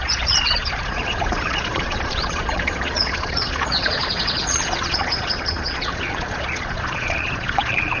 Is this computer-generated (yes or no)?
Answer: yes